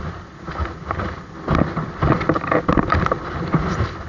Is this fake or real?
real